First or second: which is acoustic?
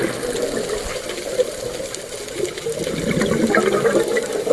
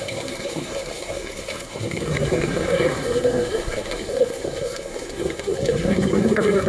first